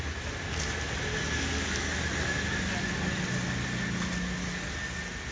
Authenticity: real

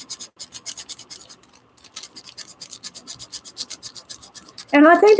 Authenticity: real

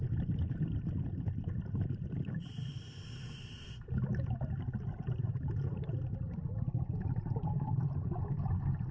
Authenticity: real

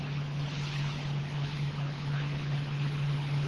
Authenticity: fake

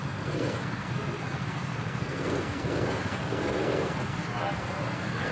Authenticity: fake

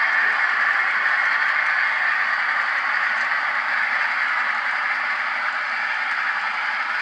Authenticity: real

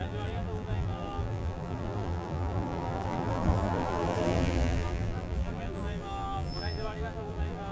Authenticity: fake